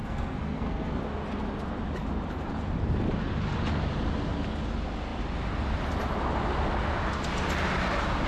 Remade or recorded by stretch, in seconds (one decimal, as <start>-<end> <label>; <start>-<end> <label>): 0.0-1.0 remade; 1.0-8.3 recorded